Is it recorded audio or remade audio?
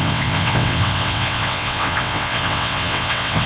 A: remade